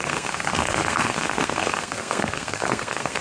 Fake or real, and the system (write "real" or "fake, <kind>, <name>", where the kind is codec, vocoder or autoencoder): fake, codec, SNAC